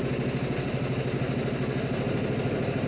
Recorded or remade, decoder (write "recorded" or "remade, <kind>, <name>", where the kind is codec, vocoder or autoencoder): recorded